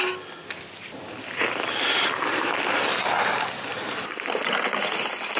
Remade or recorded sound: recorded